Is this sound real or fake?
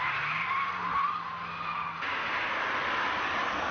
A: real